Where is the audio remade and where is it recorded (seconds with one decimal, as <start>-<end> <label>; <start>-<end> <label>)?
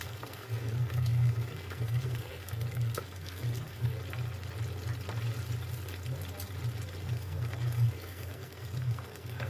0.0-3.9 remade; 3.9-7.0 recorded; 7.0-9.5 remade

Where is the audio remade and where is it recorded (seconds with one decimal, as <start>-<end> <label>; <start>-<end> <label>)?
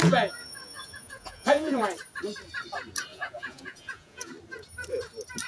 0.0-1.8 remade; 1.8-3.1 recorded; 3.1-4.3 remade; 4.3-5.5 recorded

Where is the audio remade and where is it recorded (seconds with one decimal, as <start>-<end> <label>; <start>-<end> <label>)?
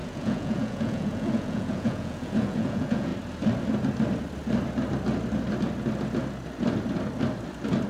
0.0-3.1 remade; 3.1-7.9 recorded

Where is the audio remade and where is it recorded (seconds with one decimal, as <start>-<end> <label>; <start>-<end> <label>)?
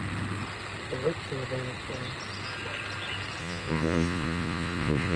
0.0-3.4 recorded; 3.4-5.2 remade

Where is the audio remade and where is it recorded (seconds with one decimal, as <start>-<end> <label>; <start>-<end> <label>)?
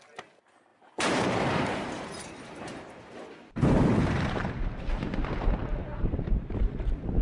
0.0-0.7 recorded; 0.7-4.5 remade; 4.5-5.9 recorded; 5.9-6.6 remade; 6.6-7.2 recorded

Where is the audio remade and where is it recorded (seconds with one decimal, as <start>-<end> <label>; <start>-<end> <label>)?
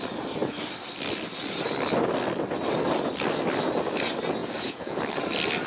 0.0-4.4 recorded; 4.4-5.0 remade; 5.0-5.7 recorded